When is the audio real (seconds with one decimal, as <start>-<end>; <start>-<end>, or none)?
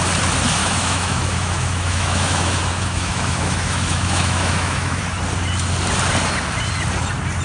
0.0-0.6; 5.0-7.4